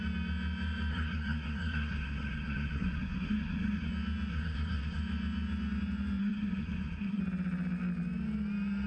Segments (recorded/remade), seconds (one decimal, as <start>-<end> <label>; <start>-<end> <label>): 0.0-0.9 recorded; 0.9-3.9 remade; 3.9-4.3 recorded; 4.3-5.0 remade; 5.0-6.2 recorded; 6.2-7.2 remade; 7.2-8.9 recorded